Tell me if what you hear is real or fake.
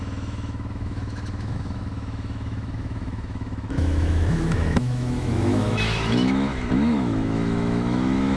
fake